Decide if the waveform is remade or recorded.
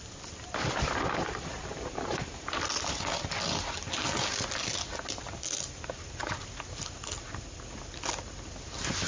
recorded